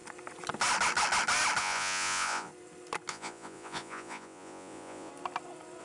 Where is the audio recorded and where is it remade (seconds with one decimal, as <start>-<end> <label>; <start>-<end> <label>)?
0.0-1.6 recorded; 1.6-2.5 remade; 2.5-3.1 recorded; 3.1-5.1 remade; 5.1-5.8 recorded